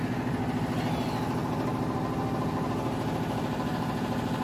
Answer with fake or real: real